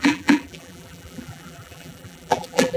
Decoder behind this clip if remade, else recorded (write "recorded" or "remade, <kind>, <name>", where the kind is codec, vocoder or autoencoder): remade, vocoder, BigVGAN v2